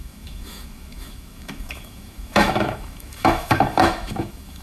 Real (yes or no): no